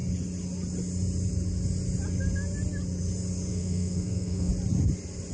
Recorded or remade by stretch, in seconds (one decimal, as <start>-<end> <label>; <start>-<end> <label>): 0.0-3.5 recorded; 3.5-4.5 remade; 4.5-5.3 recorded